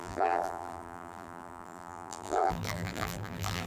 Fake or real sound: fake